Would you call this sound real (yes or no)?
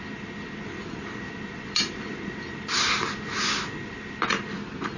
yes